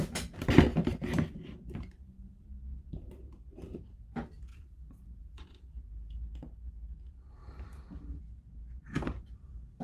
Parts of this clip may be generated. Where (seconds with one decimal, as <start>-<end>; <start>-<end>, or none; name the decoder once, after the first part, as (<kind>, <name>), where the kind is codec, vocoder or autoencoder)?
0.7-1.3 (vocoder, BigVGAN v2); 4.5-5.4; 8.6-9.8